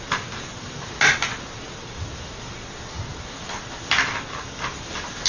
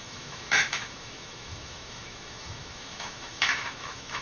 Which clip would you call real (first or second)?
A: first